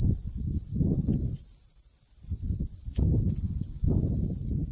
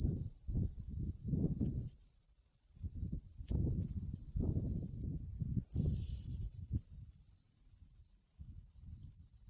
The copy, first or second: second